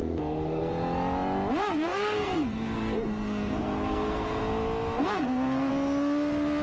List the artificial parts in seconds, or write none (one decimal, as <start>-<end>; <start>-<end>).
0.0-0.7; 1.6-4.4; 5.0-5.7